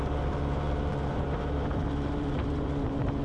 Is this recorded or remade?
remade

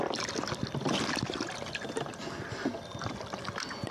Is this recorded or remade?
recorded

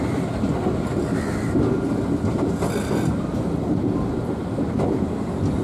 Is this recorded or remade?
recorded